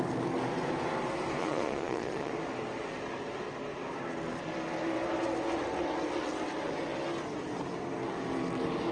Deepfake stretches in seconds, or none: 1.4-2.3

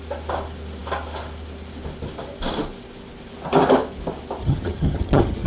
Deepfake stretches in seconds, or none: 4.4-5.5

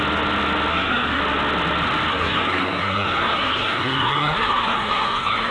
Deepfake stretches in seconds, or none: 0.7-1.2; 2.1-5.5

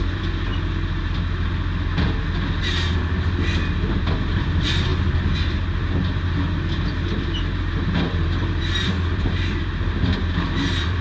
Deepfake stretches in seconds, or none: 0.0-0.5; 3.9-4.9; 6.9-11.0

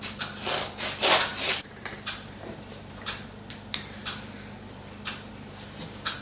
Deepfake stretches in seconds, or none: 1.3-3.5

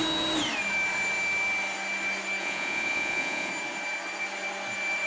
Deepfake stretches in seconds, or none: 2.4-3.5